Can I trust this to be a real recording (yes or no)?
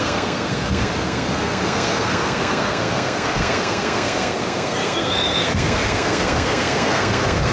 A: no